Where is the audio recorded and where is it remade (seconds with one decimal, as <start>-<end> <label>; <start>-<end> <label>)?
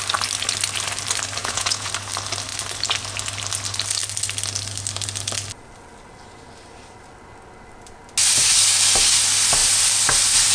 0.0-1.4 recorded; 1.4-1.9 remade; 1.9-10.5 recorded